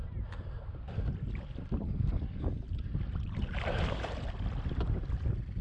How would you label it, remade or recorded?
recorded